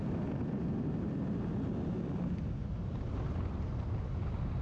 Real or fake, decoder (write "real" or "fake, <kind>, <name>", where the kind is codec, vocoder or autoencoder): real